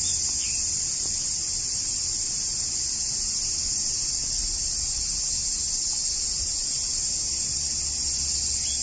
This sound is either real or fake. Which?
real